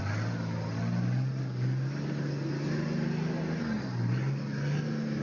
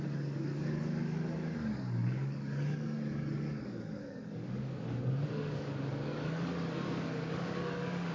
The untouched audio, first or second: first